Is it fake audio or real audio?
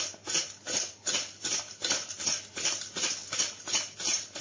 real